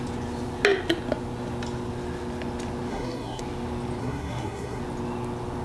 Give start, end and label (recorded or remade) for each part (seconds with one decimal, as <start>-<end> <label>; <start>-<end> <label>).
0.0-2.9 recorded; 2.9-3.4 remade; 3.4-4.0 recorded; 4.0-4.8 remade; 4.8-5.6 recorded